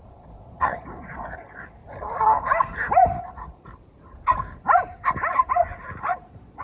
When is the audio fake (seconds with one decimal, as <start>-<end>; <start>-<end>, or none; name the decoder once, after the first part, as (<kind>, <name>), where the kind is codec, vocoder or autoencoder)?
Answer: 0.0-1.8 (vocoder, Vocos); 3.2-3.7; 6.0-6.6